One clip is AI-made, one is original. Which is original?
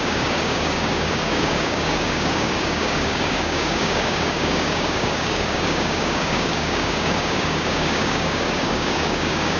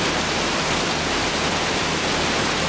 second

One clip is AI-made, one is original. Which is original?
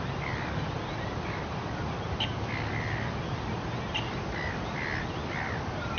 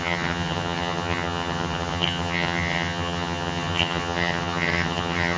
first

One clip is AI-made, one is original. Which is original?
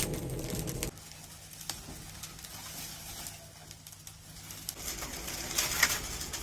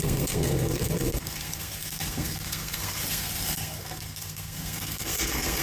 first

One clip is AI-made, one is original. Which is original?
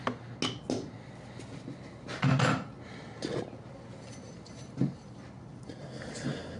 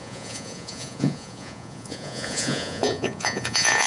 first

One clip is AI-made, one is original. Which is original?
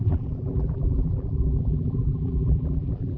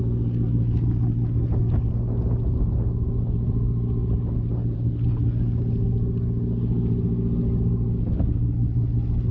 second